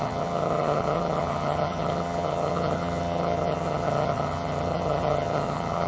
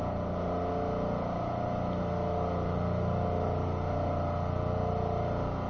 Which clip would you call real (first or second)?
second